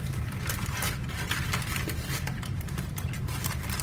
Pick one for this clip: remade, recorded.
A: recorded